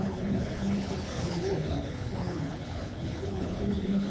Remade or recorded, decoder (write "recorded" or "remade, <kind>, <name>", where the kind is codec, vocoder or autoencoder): remade, codec, HILCodec